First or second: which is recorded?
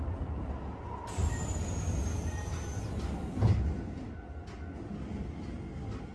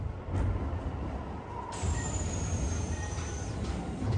first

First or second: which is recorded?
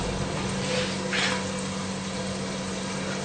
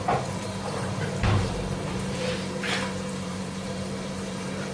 first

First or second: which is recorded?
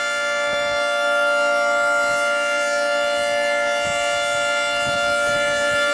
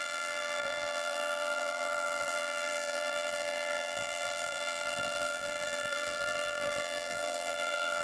first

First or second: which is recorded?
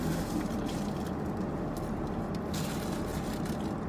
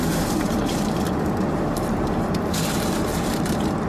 first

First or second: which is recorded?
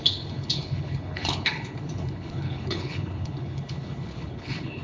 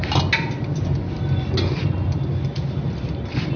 second